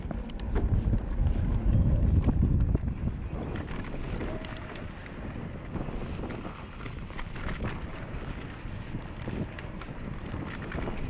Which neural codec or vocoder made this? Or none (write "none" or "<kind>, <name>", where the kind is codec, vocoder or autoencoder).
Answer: none